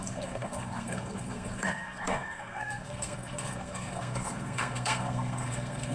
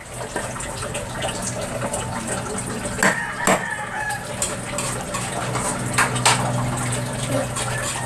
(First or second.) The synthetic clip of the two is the first